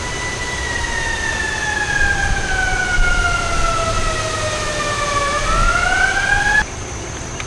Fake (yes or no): no